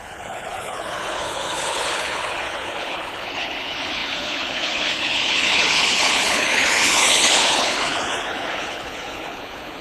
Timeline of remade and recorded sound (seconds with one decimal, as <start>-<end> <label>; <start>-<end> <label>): 0.0-9.8 remade